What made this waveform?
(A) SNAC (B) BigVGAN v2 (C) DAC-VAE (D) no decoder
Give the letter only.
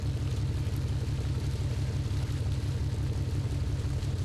D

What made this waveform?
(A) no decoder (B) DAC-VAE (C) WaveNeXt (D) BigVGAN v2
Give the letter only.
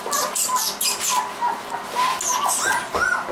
A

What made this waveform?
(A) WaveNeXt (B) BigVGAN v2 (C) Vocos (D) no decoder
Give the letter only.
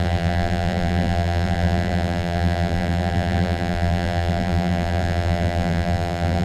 B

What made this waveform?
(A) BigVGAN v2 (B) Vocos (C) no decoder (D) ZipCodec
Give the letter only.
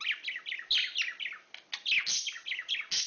A